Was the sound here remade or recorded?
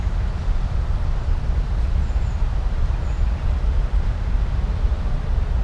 remade